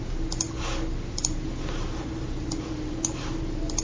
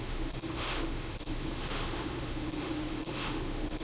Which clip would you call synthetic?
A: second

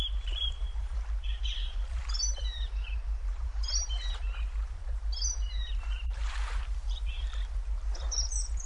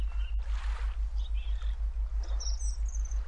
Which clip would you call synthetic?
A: first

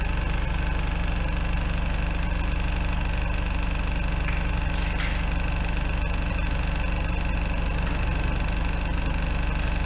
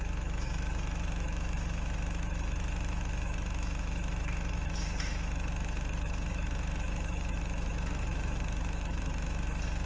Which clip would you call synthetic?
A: second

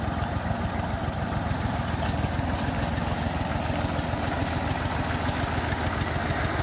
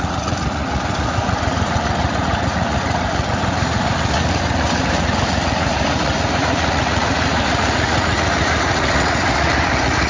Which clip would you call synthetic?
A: second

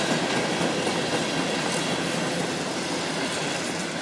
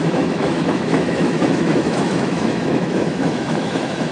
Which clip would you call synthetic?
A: second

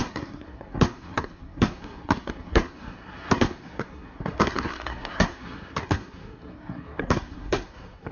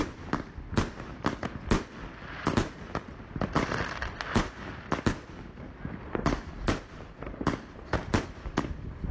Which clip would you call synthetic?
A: first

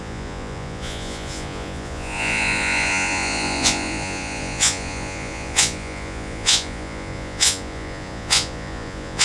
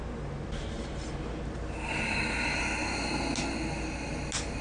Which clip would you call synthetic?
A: first